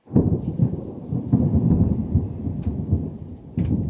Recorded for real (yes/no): yes